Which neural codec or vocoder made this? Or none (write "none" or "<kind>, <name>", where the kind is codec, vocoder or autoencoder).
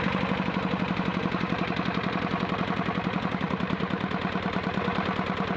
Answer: vocoder, BigVGAN v2